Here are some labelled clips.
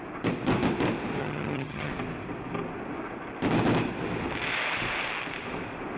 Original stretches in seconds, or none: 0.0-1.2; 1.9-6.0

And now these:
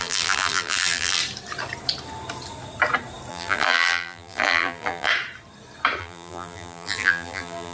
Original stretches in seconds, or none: 1.2-3.3; 5.1-6.0

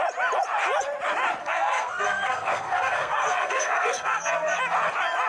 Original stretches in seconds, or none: 0.0-1.4; 4.6-5.3